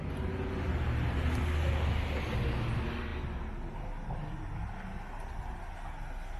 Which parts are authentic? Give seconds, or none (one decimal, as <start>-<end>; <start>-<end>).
0.0-6.4